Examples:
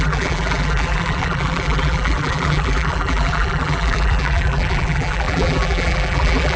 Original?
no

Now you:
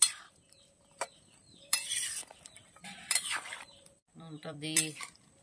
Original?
no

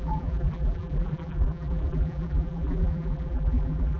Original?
no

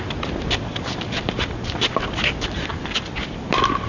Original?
no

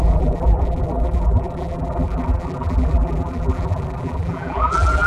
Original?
no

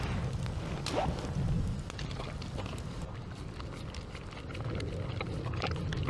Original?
yes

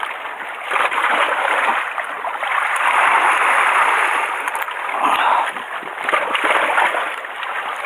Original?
yes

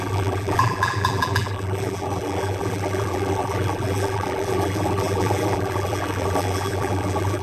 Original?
no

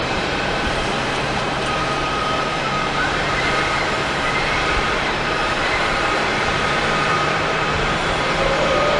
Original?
no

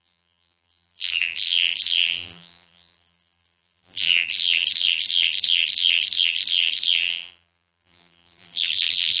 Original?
no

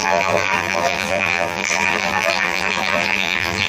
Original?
no